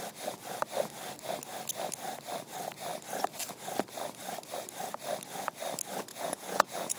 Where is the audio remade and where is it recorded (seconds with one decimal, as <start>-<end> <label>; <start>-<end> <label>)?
0.0-6.1 recorded; 6.1-7.0 remade